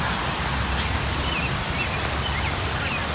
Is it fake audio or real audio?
real